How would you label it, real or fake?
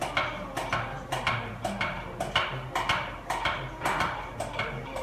real